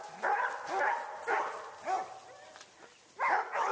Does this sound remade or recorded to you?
recorded